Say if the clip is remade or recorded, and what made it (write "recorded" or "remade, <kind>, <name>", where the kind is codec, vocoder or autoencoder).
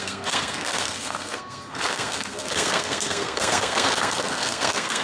remade, codec, SNAC